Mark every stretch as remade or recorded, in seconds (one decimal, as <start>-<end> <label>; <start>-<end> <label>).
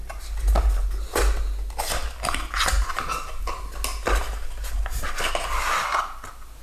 0.0-6.6 recorded